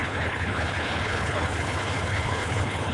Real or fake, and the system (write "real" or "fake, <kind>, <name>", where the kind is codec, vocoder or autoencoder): fake, codec, HILCodec